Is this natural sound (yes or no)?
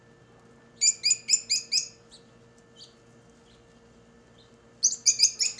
yes